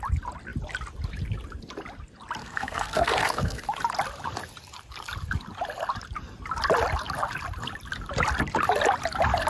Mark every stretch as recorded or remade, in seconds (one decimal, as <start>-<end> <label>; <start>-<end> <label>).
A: 0.0-2.4 recorded; 2.4-3.6 remade; 3.6-9.5 recorded